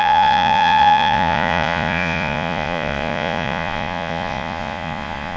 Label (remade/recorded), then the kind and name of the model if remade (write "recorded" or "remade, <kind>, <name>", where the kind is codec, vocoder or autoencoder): remade, vocoder, Vocos